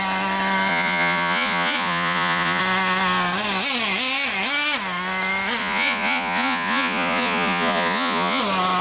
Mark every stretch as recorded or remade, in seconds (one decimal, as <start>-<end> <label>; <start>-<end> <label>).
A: 0.0-0.7 recorded; 0.7-2.6 remade; 2.6-5.6 recorded; 5.6-8.4 remade; 8.4-8.8 recorded